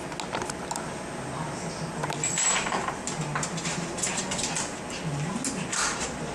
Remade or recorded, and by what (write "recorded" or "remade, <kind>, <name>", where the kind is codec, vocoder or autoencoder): recorded